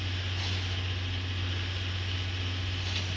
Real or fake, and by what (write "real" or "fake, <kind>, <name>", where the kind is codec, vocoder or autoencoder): real